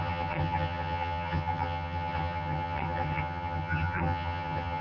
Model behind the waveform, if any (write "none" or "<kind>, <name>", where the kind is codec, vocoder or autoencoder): vocoder, HiFi-GAN